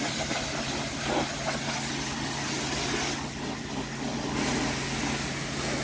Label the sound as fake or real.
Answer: real